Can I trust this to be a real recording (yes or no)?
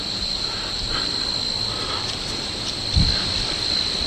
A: yes